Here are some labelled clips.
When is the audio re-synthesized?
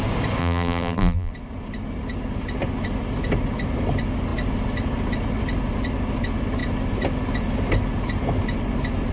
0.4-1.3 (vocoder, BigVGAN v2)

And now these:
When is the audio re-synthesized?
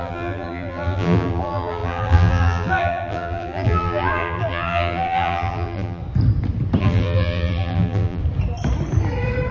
0.0-6.0 (vocoder, BigVGAN v2); 6.8-8.2